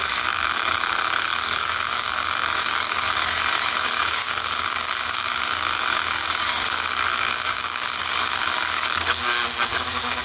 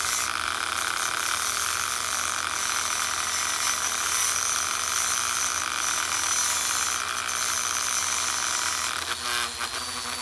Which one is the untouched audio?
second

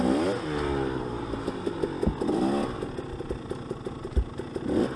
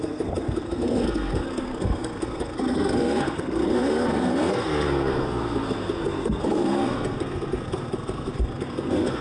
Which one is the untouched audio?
first